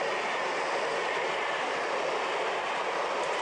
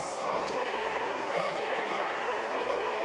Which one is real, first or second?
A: first